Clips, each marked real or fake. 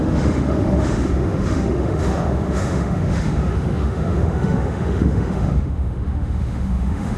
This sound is fake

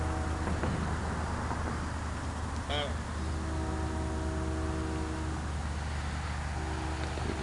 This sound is real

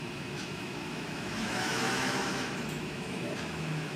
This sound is fake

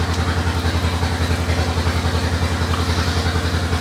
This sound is real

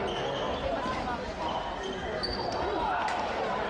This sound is real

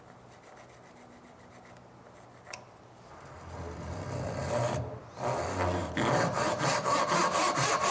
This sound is real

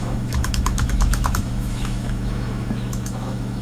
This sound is fake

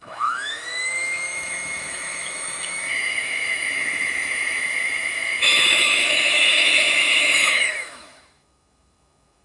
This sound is fake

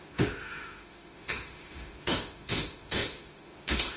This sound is fake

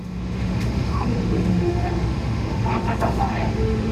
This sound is fake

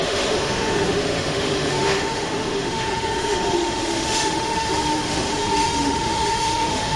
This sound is fake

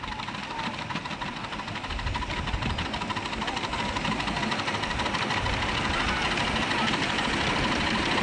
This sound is real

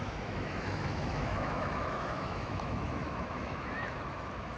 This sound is fake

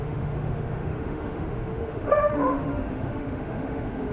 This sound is fake